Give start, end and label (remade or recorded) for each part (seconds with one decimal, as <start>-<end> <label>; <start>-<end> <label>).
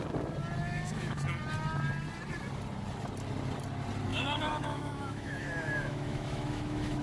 0.0-0.6 recorded; 0.6-1.2 remade; 1.2-4.1 recorded; 4.1-7.0 remade